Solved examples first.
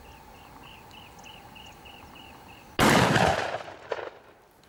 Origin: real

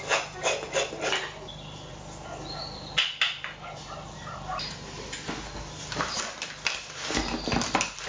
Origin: real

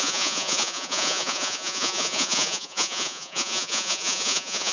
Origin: fake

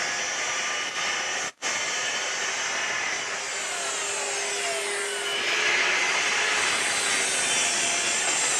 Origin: real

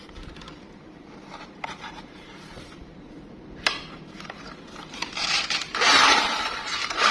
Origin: fake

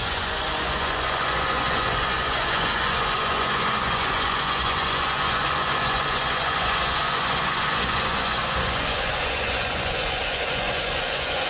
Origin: fake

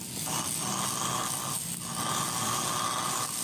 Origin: real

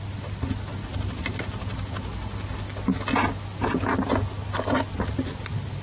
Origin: real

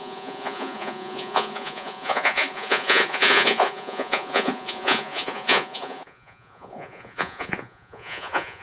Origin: fake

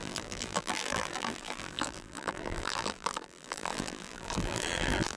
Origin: fake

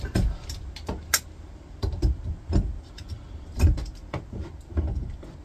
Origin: real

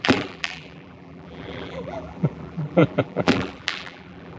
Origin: fake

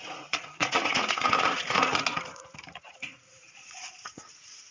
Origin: fake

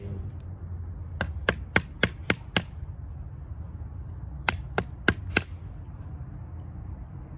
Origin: real